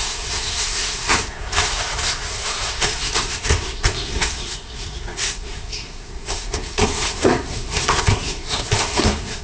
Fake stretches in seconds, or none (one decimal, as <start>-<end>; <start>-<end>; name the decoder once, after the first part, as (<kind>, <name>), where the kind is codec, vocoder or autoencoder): 0.0-9.4 (codec, SNAC)